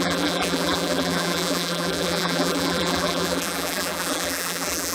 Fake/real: fake